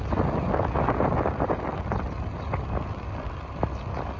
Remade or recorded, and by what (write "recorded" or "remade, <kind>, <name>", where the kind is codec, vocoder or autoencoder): recorded